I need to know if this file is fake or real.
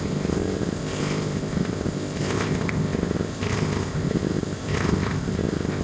fake